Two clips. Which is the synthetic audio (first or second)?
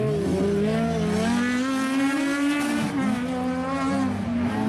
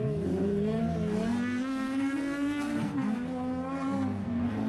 second